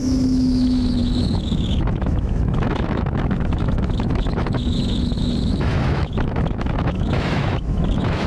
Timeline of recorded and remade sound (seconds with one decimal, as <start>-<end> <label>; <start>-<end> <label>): 0.0-8.3 remade